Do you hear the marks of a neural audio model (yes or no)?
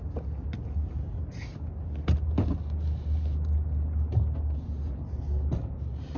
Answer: no